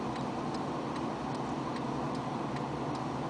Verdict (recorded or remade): recorded